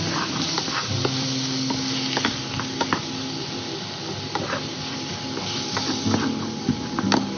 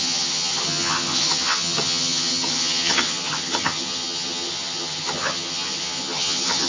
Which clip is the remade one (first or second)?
second